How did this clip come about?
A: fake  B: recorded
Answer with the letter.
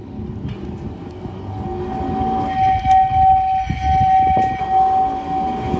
B